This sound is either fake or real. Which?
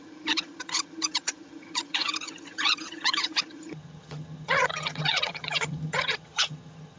fake